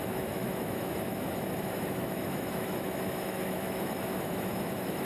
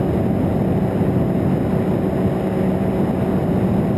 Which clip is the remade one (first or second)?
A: first